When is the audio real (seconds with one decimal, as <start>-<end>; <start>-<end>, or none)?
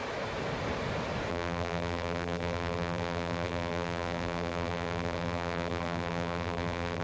0.0-1.3